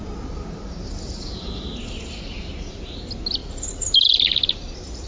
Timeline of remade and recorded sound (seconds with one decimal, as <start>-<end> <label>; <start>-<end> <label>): 0.0-5.1 recorded